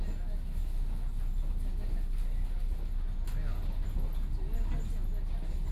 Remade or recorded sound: recorded